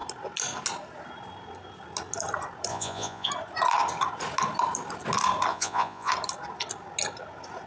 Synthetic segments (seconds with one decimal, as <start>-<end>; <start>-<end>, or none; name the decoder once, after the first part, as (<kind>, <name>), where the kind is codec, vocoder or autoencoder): 2.7-3.3 (vocoder, Vocos); 5.5-6.1